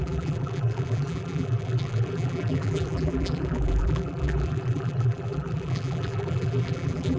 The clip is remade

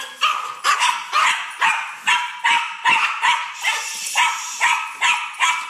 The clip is recorded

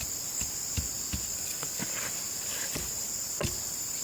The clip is remade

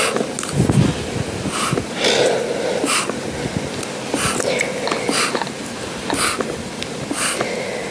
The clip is recorded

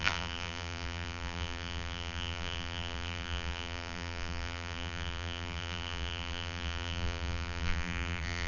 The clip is remade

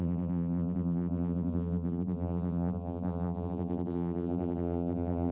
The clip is remade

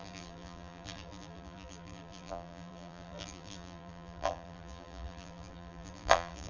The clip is remade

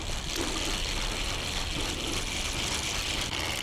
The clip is recorded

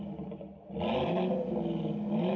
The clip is recorded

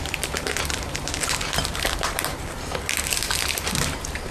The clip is remade